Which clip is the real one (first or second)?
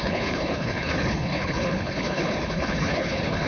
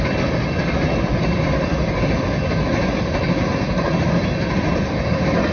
second